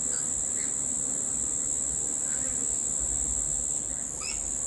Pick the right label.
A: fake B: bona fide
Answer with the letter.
B